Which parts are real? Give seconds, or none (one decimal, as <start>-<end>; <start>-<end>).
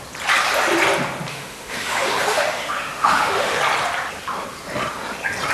0.0-1.3; 3.6-5.5